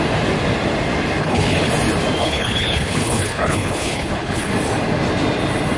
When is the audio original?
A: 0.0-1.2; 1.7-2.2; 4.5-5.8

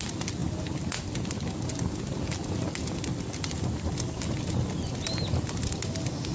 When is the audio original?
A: 0.0-6.3

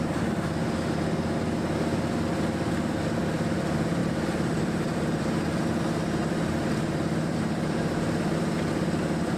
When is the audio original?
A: 0.0-4.0; 5.8-6.2; 8.4-9.4

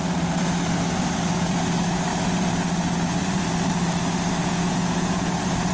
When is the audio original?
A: 0.0-4.4; 5.3-5.7

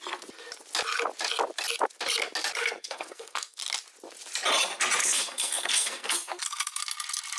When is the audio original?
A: 0.0-2.6; 3.6-5.0; 6.8-7.4